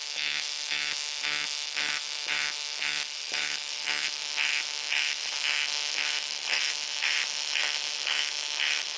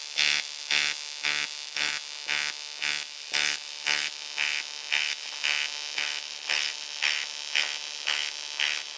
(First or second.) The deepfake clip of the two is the first